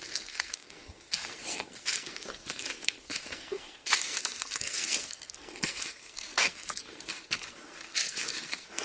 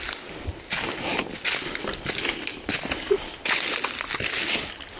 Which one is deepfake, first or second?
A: first